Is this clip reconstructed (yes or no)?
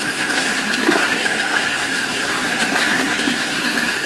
yes